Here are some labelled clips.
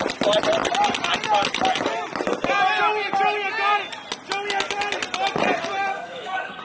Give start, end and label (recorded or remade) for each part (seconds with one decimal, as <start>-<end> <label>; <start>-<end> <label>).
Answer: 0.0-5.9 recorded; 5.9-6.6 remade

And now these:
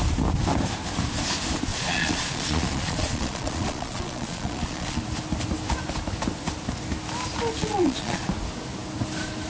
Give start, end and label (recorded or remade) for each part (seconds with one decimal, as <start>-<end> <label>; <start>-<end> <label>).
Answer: 0.0-1.7 recorded; 1.7-5.0 remade; 5.0-7.6 recorded; 7.6-8.2 remade; 8.2-9.5 recorded

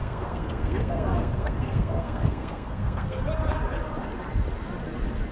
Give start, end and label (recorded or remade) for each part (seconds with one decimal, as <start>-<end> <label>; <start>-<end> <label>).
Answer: 0.0-3.2 remade; 3.2-5.3 recorded

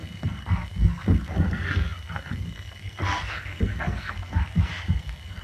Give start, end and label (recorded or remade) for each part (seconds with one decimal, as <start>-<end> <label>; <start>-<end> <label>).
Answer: 0.0-5.4 remade

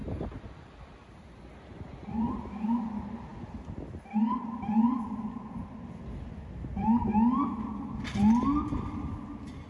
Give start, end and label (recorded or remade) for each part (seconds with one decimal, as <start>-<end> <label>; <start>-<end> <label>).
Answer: 0.0-9.7 recorded